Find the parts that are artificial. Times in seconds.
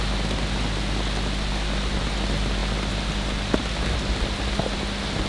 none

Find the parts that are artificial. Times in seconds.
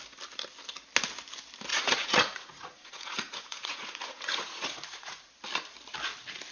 1.7-5.3 (vocoder, Vocos)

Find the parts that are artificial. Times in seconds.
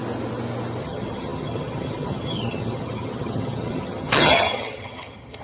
0.8-5.4 (vocoder, HiFi-GAN)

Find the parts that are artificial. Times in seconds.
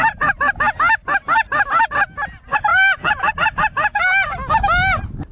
2.7-3.3 (vocoder, BigVGAN v2)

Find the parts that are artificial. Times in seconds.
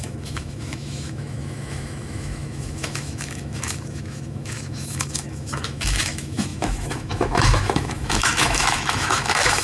0.0-9.6 (autoencoder, DAC-VAE)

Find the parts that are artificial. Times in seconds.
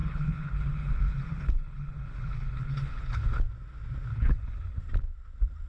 0.0-3.4 (codec, HILCodec); 4.1-4.8